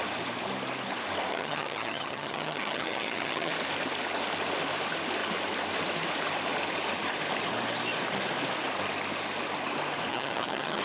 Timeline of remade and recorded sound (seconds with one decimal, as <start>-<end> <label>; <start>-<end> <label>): 0.0-1.3 recorded; 1.3-3.5 remade; 3.5-10.1 recorded; 10.1-10.8 remade